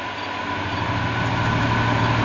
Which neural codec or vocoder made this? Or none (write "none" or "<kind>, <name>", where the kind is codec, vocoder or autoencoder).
none